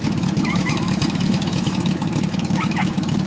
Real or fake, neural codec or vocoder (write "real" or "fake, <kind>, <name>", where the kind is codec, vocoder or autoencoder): fake, autoencoder, DAC-VAE